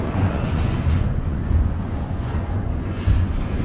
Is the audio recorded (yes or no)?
no